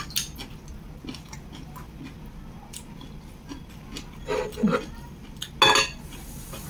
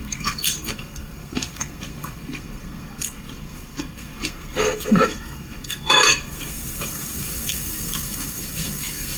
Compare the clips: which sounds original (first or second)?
first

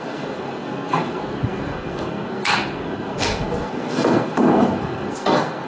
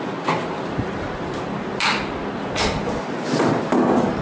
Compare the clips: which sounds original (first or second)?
second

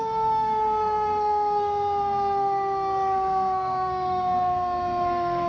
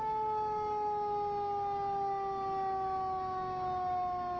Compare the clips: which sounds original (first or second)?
second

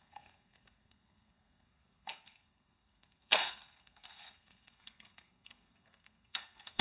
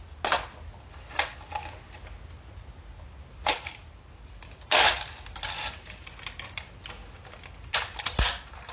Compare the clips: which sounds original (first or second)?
second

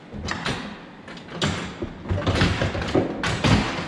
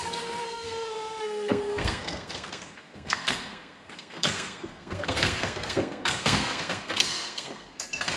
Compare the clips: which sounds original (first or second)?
first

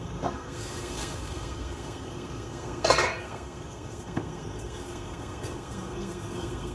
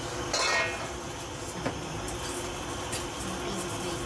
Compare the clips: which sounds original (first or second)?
second